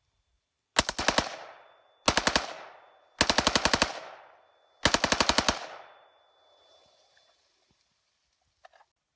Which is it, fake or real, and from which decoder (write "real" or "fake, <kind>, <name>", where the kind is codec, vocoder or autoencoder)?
real